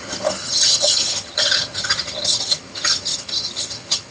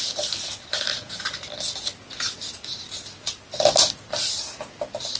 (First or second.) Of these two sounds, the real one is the second